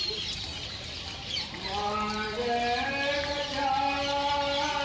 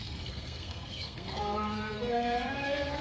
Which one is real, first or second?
first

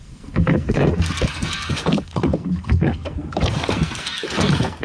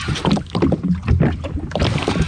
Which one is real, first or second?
second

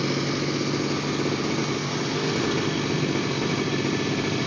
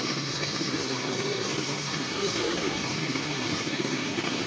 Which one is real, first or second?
first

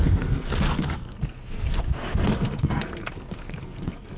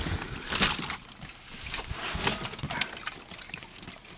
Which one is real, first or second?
second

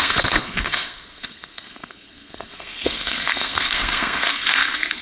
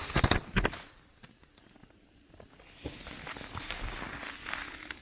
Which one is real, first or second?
second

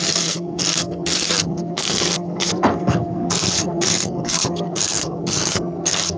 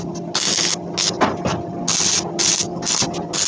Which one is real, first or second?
second